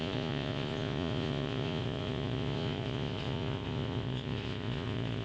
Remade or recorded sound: remade